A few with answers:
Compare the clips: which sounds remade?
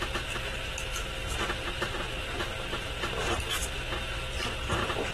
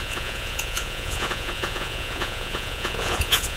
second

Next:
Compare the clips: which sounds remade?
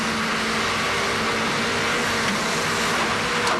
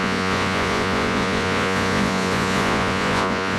second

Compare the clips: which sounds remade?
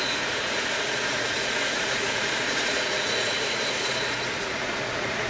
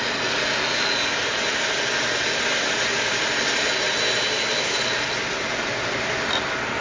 first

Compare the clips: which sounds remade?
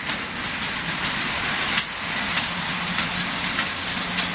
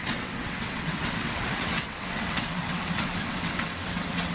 second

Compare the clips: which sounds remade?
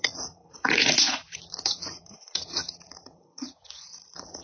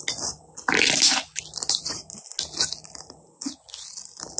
first